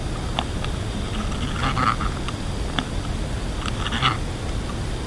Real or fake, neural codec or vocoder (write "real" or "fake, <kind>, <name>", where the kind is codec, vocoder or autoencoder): real